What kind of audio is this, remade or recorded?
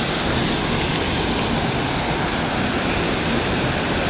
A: recorded